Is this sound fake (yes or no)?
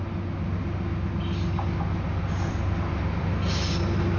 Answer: no